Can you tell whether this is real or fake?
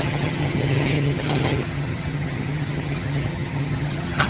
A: fake